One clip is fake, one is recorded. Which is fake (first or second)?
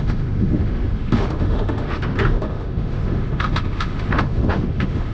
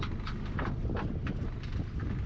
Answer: first